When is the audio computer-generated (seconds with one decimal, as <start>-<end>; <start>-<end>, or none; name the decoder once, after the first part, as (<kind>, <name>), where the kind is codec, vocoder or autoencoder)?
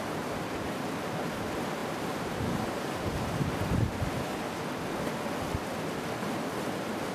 1.8-3.5 (vocoder, BigVGAN v2)